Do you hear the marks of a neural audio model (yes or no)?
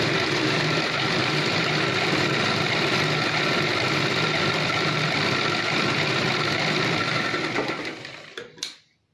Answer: yes